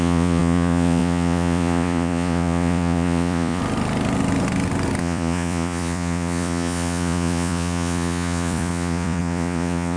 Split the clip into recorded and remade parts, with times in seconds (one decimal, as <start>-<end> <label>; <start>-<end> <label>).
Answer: 0.0-3.6 remade; 3.6-5.0 recorded; 5.0-10.0 remade